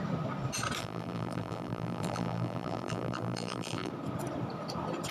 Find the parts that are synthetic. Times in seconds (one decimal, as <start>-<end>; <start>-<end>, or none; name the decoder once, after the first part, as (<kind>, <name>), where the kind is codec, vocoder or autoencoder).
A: 0.8-3.9 (vocoder, BigVGAN v2)